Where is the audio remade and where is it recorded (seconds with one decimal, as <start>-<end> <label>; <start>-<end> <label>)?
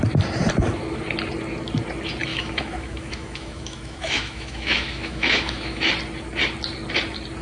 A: 0.0-2.3 recorded; 2.3-5.9 remade; 5.9-7.4 recorded